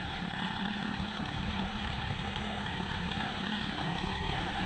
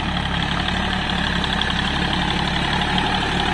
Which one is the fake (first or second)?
first